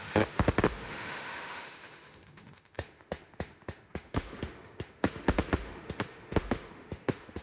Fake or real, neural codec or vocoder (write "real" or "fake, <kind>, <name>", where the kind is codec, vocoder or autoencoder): fake, autoencoder, DAC-VAE